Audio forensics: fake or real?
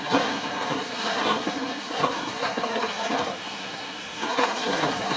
fake